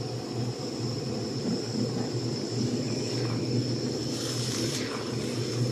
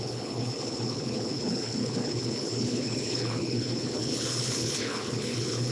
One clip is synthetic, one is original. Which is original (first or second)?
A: first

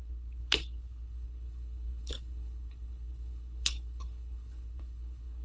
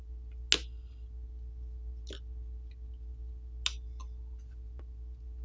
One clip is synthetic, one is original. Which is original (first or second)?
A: second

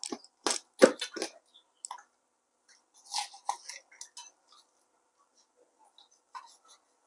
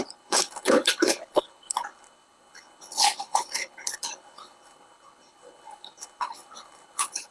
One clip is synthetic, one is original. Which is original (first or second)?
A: first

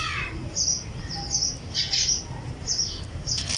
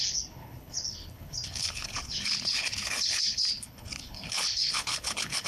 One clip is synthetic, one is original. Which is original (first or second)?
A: first